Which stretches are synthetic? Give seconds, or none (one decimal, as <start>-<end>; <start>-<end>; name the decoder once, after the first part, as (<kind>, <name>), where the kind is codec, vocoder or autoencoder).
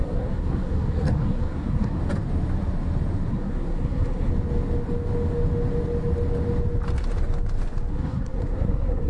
0.0-2.0 (codec, SNAC); 3.3-4.3; 7.9-9.1